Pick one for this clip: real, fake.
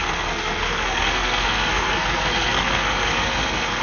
fake